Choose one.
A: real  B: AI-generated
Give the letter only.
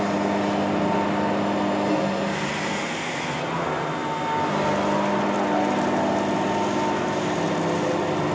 A